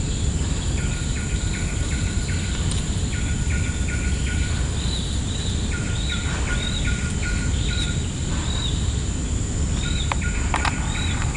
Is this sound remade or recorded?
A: recorded